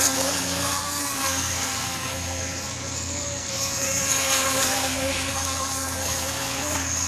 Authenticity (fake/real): fake